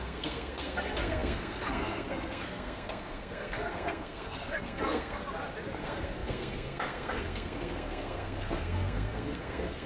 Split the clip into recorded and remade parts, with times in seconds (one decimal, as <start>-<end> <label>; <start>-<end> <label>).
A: 0.0-5.2 remade; 5.2-5.8 recorded; 5.8-9.9 remade